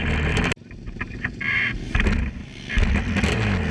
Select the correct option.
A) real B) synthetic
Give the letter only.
A